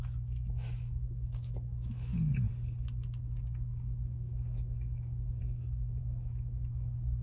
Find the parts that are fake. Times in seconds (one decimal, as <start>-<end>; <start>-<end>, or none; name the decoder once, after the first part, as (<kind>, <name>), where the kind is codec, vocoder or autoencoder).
0.0-2.1 (autoencoder, DAC-VAE); 3.5-7.2